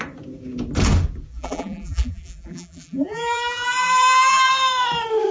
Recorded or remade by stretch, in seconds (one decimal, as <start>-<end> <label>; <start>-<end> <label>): 0.0-1.3 recorded; 1.3-4.5 remade; 4.5-5.3 recorded